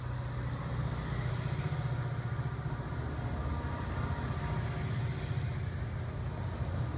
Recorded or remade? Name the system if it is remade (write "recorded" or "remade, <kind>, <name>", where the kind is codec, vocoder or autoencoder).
recorded